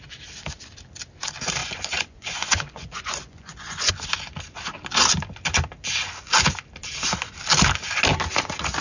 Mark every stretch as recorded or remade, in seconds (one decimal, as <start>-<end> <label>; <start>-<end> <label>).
0.0-1.6 recorded; 1.6-3.9 remade; 3.9-8.8 recorded